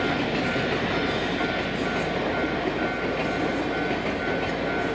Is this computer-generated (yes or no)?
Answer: no